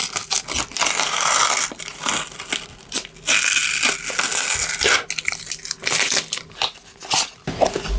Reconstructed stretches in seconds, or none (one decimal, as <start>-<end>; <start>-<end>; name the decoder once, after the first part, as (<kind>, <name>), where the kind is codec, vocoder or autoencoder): none